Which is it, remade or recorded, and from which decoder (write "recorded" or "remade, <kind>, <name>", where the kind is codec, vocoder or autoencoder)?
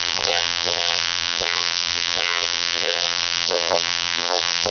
remade, vocoder, BigVGAN v2